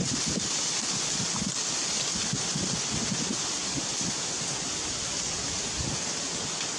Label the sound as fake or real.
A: real